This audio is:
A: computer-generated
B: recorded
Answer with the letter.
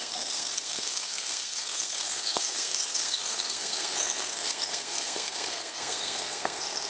A